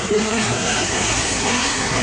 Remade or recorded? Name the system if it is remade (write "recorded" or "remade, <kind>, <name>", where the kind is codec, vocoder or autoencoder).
remade, codec, SNAC